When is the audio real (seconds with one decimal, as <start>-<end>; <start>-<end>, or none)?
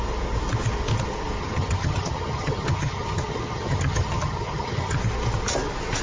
0.0-1.4; 5.0-6.0